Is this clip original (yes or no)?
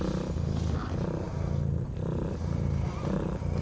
yes